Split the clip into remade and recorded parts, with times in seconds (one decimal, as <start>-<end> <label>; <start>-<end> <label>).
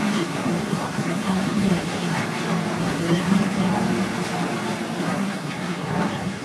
0.0-2.2 remade; 2.2-2.8 recorded; 2.8-3.7 remade; 3.7-5.0 recorded; 5.0-6.4 remade